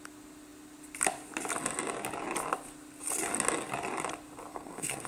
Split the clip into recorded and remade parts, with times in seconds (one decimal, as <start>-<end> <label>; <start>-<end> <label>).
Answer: 0.0-4.5 recorded; 4.5-5.1 remade